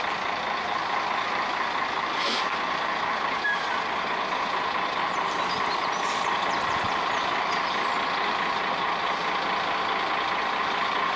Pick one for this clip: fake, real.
real